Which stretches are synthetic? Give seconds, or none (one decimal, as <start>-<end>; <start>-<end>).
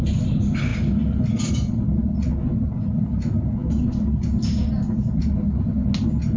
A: none